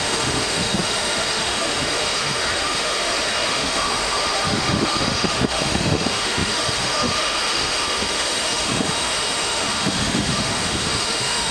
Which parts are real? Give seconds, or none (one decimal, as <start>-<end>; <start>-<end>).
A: none